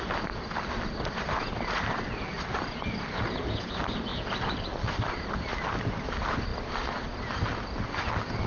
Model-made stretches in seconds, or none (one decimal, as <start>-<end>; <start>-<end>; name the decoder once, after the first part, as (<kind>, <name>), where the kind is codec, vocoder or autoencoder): 4.1-5.1 (vocoder, BigVGAN v2); 6.5-7.2